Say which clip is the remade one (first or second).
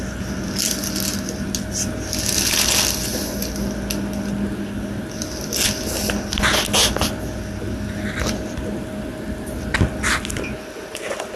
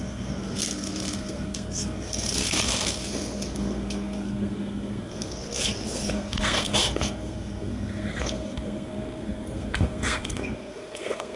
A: second